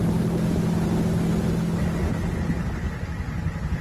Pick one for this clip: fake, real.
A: real